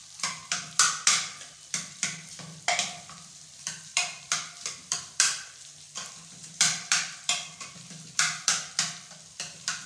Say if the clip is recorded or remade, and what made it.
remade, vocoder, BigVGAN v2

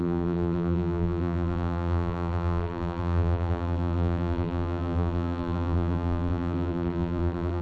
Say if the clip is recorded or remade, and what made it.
remade, vocoder, BigVGAN v2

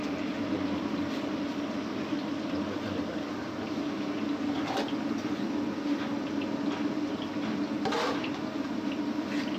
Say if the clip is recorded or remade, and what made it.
recorded